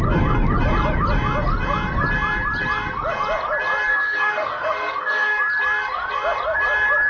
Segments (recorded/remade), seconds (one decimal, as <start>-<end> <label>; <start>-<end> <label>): 0.0-3.9 recorded; 3.9-5.4 remade; 5.4-7.1 recorded